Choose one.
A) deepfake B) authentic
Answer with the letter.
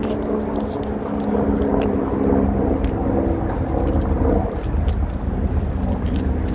B